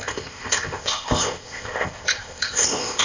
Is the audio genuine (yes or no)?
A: no